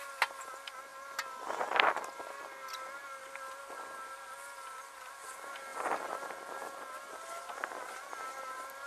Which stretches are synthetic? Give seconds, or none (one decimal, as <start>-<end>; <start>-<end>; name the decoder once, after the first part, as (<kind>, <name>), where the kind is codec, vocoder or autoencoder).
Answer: none